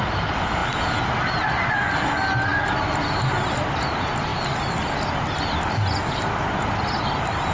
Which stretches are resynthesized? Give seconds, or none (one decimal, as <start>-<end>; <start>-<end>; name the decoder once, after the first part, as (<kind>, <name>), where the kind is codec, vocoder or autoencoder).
none